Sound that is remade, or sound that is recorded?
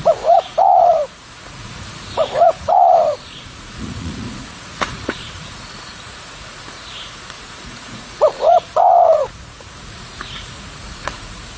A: remade